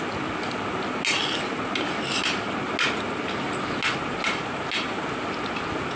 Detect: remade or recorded recorded